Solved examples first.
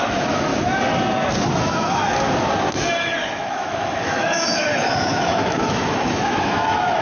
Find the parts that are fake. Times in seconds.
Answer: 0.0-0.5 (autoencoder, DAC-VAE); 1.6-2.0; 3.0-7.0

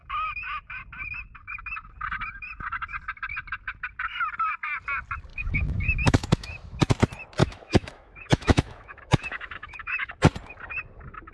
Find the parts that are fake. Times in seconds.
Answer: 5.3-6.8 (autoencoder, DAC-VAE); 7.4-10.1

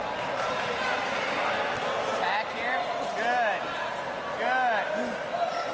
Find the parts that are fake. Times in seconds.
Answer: none

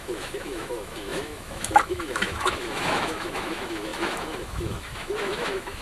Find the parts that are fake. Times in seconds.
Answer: 0.0-5.8 (autoencoder, DAC-VAE)

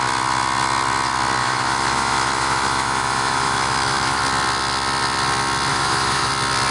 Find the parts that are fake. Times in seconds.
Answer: 1.4-4.2 (autoencoder, DAC-VAE); 5.7-6.3

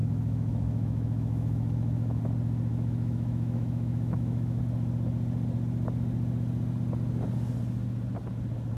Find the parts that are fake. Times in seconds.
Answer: 0.0-2.2 (autoencoder, DAC-VAE); 2.7-4.6

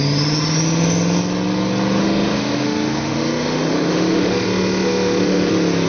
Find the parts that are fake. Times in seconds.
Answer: 2.0-5.5 (autoencoder, DAC-VAE)